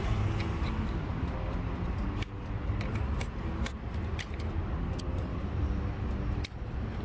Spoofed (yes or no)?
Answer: no